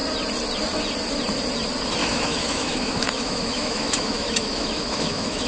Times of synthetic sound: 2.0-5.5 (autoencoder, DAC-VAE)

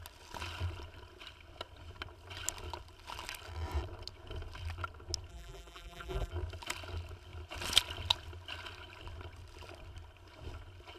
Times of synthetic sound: 5.3-6.3 (vocoder, BigVGAN v2)

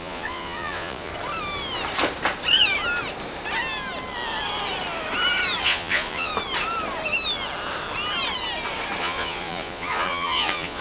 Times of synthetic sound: 0.0-1.1 (vocoder, Vocos); 5.6-6.3; 9.0-10.8

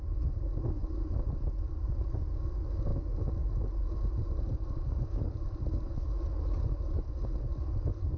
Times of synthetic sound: none